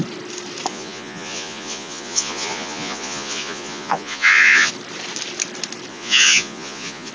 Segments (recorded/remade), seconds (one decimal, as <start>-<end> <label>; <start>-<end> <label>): 0.0-0.7 recorded; 0.7-4.7 remade; 4.7-5.9 recorded; 5.9-7.1 remade